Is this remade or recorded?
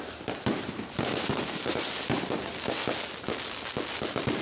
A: recorded